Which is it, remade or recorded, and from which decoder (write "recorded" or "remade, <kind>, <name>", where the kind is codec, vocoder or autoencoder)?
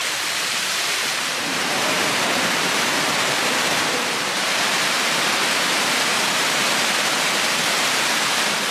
remade, vocoder, BigVGAN v2